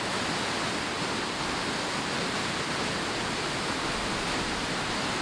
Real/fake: real